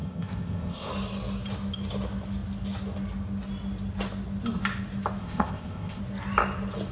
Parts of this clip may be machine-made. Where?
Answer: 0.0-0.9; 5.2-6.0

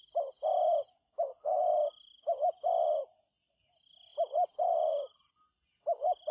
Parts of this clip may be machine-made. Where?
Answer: 4.1-5.3

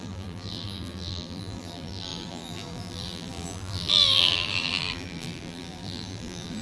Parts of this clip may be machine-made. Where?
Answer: 0.0-6.6

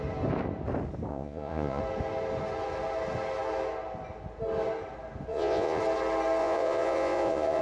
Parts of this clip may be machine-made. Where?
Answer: 1.1-1.8; 5.3-5.8; 6.4-7.6

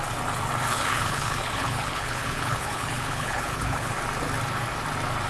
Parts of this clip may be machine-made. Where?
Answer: 0.7-3.9

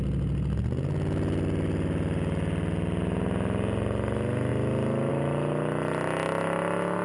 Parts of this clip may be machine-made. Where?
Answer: none